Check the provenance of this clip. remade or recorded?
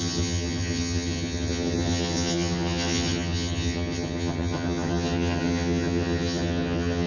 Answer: remade